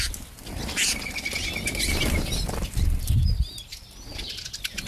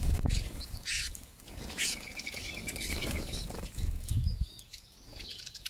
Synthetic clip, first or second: second